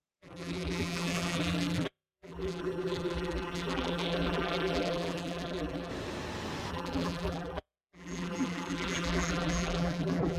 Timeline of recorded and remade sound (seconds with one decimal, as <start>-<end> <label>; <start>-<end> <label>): 0.0-5.9 remade; 5.9-6.7 recorded; 6.7-10.4 remade